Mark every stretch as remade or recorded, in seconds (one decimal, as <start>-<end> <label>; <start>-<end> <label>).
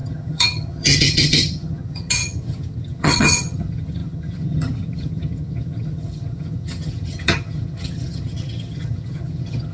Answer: 0.0-9.7 remade